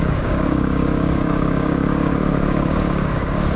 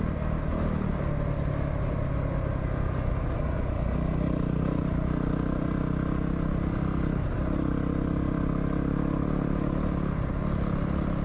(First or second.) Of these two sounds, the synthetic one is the first